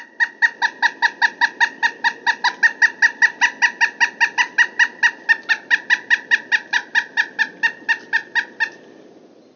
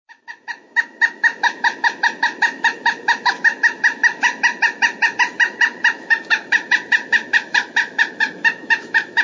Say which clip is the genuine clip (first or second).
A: first